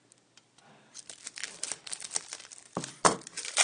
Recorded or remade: remade